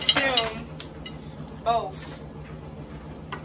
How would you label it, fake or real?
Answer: real